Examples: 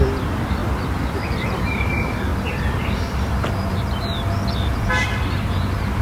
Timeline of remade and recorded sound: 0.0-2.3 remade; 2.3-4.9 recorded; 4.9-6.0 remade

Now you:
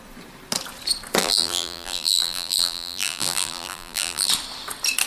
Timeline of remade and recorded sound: 0.0-1.2 recorded; 1.2-4.3 remade; 4.3-5.1 recorded

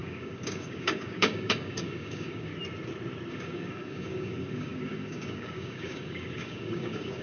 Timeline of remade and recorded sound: 0.0-2.5 remade; 2.5-3.3 recorded; 3.3-7.2 remade

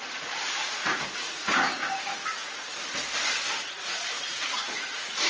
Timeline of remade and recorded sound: 0.0-1.8 remade; 1.8-3.6 recorded; 3.6-5.3 remade